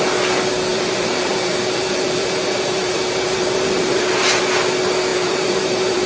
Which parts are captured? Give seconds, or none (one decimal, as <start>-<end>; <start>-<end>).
0.0-0.7; 4.4-5.1